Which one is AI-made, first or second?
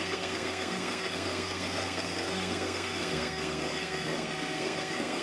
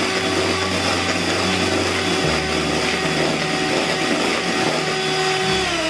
first